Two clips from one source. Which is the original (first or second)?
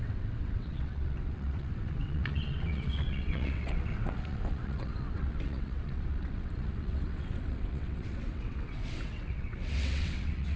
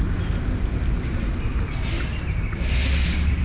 second